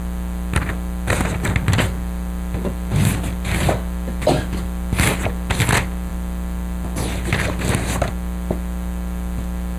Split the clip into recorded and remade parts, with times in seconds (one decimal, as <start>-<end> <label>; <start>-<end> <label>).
0.0-9.8 recorded